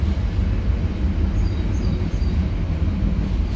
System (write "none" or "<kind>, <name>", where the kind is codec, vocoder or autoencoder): none